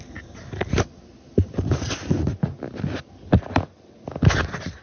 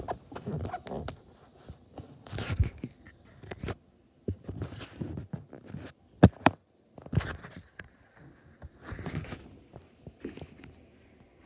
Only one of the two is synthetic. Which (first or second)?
second